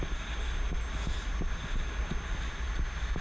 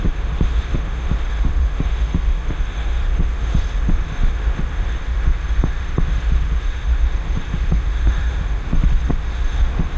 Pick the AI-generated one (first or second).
second